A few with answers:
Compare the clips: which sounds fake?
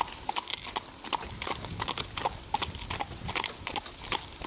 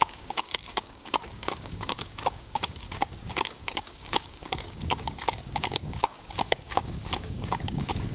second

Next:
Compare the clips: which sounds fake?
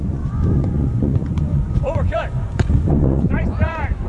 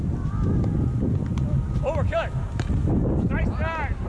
first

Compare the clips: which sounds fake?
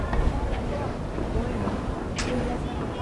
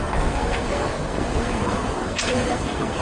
second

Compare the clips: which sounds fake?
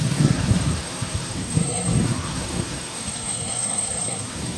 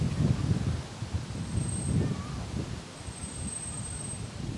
first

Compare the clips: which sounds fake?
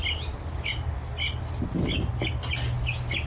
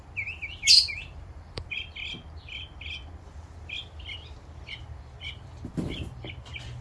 second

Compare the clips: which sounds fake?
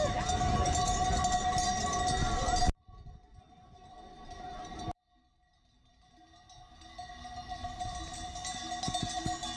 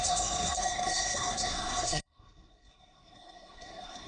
second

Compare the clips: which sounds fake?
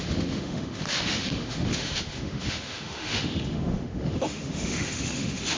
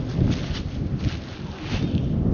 first